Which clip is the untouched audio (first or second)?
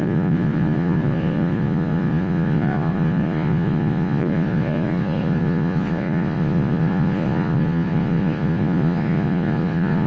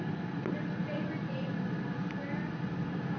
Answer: second